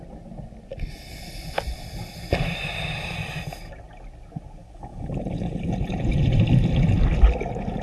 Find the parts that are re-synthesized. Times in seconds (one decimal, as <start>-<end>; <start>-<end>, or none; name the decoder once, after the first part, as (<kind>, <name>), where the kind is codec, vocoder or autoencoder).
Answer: 4.9-6.4 (vocoder, Vocos)